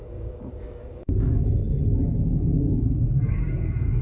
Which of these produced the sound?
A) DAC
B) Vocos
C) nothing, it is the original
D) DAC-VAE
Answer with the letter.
A